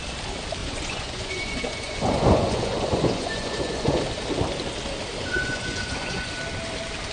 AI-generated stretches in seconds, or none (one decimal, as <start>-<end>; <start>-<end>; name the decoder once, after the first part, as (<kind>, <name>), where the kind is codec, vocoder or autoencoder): 0.6-4.0 (vocoder, Vocos); 5.3-6.3